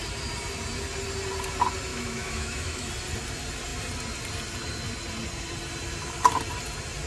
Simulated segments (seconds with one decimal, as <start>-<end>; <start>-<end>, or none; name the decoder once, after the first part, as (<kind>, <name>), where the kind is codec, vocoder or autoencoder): 1.9-2.9 (autoencoder, DAC-VAE)